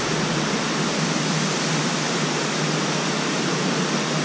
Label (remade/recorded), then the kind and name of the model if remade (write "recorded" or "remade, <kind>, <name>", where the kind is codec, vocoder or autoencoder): recorded